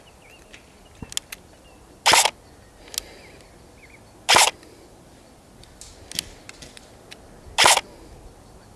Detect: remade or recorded recorded